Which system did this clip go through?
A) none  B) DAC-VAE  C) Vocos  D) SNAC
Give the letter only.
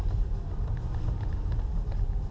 A